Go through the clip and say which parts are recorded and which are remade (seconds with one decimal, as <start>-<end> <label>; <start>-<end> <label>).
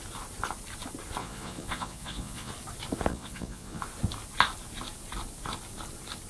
0.0-1.2 recorded; 1.2-2.5 remade; 2.5-3.1 recorded; 3.1-3.8 remade; 3.8-6.3 recorded